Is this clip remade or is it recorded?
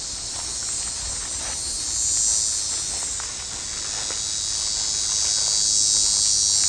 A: recorded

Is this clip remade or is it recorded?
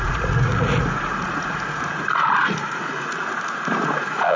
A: remade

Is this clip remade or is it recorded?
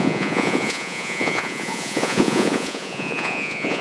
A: remade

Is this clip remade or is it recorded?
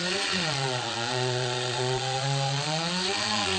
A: remade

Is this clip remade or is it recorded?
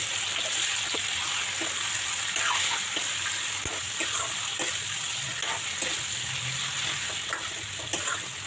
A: recorded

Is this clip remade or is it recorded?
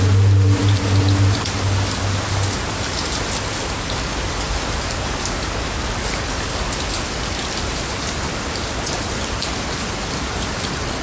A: recorded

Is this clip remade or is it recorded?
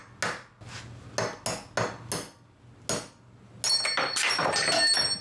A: recorded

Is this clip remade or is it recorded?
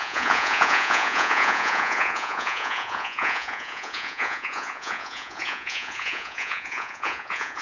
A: remade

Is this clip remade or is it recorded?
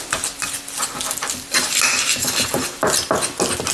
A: recorded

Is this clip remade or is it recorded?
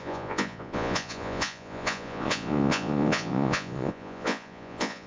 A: remade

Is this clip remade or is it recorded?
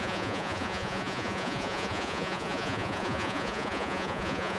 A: remade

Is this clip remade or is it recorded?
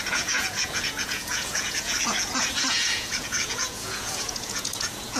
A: remade